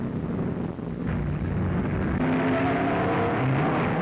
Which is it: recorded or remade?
recorded